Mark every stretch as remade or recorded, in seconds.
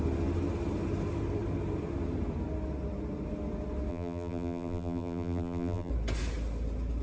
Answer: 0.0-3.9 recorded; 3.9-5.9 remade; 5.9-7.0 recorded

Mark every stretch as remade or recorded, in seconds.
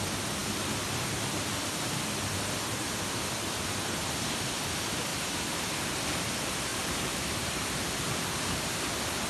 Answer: 0.0-5.1 recorded; 5.1-5.9 remade; 5.9-6.7 recorded; 6.7-8.9 remade; 8.9-9.3 recorded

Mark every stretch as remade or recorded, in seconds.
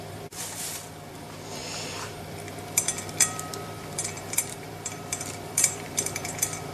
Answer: 0.0-6.7 remade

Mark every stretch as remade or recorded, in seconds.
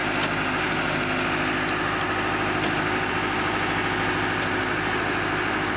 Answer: 0.0-5.8 recorded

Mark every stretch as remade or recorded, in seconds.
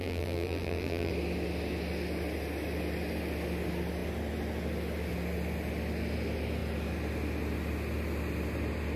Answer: 0.0-1.1 remade; 1.1-9.0 recorded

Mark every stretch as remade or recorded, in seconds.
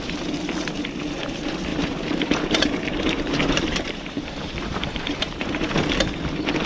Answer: 0.0-1.7 recorded; 1.7-5.7 remade; 5.7-6.7 recorded